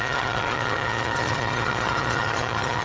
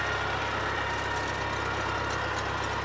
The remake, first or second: first